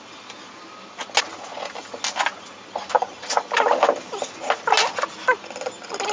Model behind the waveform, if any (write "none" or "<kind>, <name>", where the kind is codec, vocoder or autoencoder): none